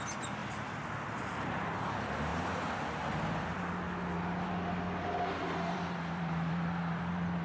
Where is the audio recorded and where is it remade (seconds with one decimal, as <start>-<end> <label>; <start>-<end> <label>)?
0.0-0.4 remade; 0.4-1.3 recorded; 1.3-2.3 remade; 2.3-5.7 recorded; 5.7-7.4 remade